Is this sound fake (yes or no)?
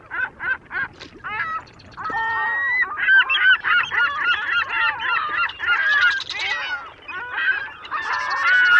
no